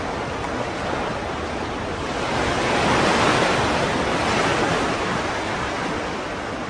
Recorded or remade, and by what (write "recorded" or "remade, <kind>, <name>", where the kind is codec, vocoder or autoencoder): recorded